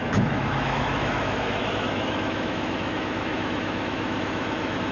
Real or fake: fake